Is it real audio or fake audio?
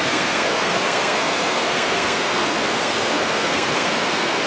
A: fake